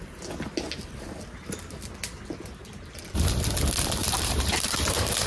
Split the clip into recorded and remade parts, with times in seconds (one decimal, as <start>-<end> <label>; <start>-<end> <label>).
0.0-2.6 recorded; 2.6-3.1 remade; 3.1-4.0 recorded; 4.0-5.3 remade